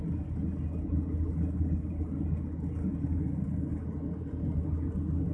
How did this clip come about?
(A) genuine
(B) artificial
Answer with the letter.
A